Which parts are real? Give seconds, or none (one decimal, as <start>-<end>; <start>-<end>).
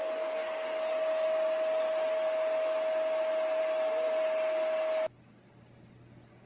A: 0.0-6.5